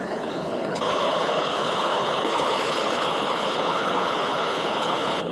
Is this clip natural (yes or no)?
no